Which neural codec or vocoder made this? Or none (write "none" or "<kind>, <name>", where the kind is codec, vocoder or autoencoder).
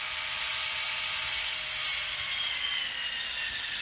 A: none